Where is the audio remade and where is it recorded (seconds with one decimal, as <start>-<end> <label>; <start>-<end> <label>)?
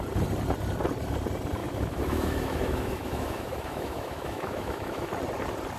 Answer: 0.0-1.6 recorded; 1.6-5.1 remade; 5.1-5.8 recorded